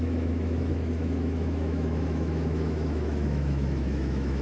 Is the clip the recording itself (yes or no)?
no